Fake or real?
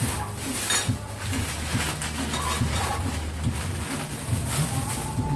real